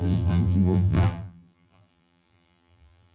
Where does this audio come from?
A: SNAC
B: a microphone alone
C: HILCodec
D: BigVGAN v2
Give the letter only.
D